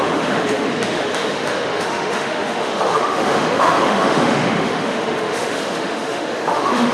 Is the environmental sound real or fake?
fake